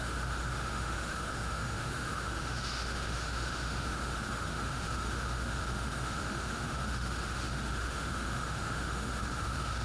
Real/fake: fake